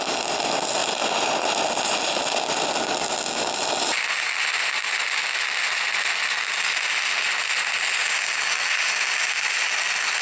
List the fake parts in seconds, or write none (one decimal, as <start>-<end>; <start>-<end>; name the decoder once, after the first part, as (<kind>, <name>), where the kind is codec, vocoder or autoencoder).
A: none